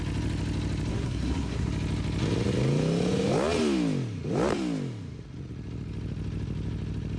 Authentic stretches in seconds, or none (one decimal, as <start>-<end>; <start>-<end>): 0.0-0.9; 1.7-7.2